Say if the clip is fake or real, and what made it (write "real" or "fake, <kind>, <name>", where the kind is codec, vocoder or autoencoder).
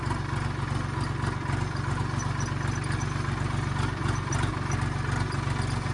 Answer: real